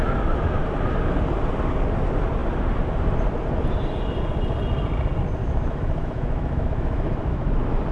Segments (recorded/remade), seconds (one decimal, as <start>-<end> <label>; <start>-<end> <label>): 0.0-5.4 recorded; 5.4-7.5 remade; 7.5-7.9 recorded